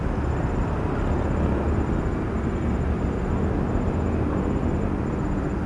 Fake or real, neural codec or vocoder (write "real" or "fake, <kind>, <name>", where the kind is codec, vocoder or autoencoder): real